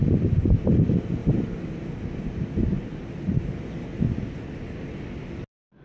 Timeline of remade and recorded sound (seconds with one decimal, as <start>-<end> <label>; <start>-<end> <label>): 0.0-5.8 recorded